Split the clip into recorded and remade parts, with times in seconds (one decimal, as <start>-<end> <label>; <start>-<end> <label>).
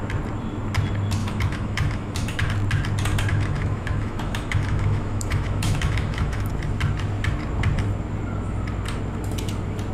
0.0-1.2 recorded; 1.2-2.5 remade; 2.5-3.3 recorded; 3.3-6.5 remade; 6.5-9.9 recorded